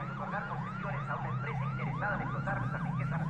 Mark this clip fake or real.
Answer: fake